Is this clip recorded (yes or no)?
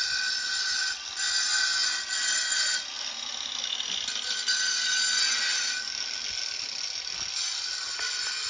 yes